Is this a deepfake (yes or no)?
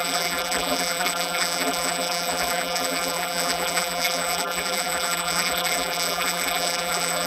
yes